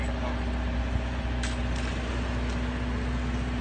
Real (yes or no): yes